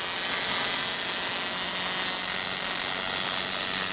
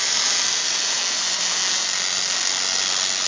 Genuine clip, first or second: first